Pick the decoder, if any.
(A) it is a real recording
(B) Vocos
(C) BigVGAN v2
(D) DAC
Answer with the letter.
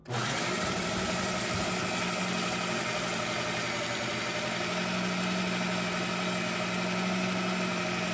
A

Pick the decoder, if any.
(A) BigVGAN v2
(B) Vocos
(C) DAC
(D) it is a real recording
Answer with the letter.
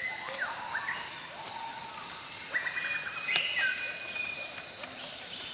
D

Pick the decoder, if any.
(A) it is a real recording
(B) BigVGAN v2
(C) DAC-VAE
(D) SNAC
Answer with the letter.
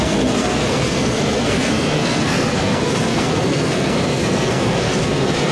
D